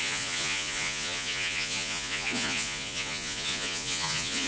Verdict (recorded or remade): remade